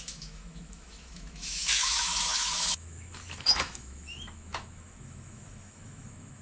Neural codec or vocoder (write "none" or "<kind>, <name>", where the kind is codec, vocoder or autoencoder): autoencoder, DAC-VAE